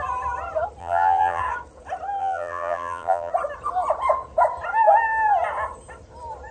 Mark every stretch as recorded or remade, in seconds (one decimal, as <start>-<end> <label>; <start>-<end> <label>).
0.0-0.8 recorded; 0.8-1.4 remade; 1.4-2.2 recorded; 2.2-3.3 remade; 3.3-6.5 recorded